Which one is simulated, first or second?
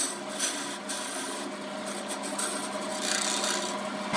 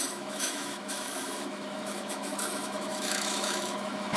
second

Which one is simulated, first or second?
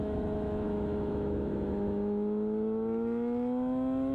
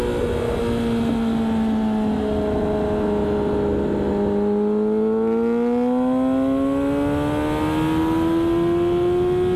first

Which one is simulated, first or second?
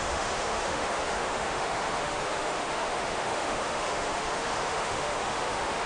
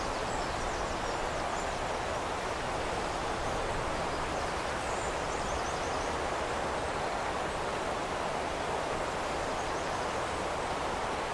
first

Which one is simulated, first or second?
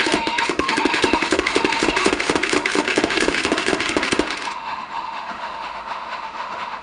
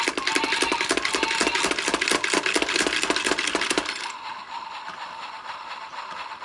first